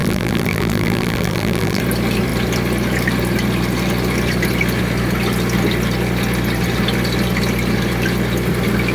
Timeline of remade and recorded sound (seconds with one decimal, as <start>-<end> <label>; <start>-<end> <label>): 0.0-1.8 remade; 1.8-8.9 recorded